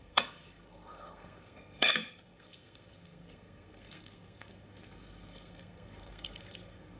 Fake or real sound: fake